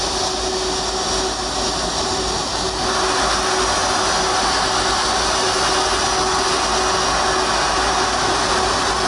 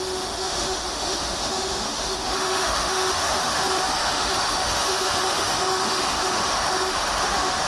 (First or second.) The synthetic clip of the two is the second